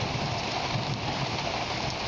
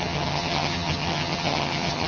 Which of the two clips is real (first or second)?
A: first